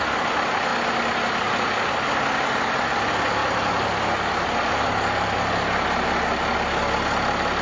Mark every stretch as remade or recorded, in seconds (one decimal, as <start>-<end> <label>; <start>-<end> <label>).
0.0-7.6 recorded